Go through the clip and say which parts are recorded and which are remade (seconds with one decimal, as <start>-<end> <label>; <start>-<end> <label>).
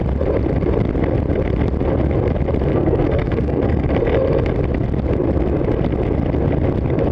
0.0-2.7 recorded; 2.7-3.9 remade; 3.9-7.1 recorded